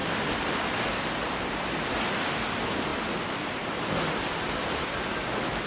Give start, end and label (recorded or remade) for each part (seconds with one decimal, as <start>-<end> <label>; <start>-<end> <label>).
0.0-2.0 remade; 2.0-2.9 recorded; 2.9-3.9 remade; 3.9-5.7 recorded